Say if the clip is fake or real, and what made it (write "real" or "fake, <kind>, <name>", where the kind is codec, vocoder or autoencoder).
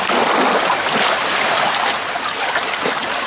fake, vocoder, BigVGAN v2